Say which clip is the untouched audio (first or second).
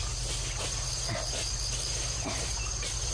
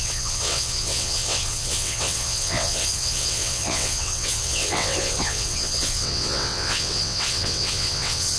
first